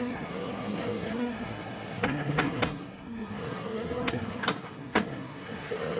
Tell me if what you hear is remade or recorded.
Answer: remade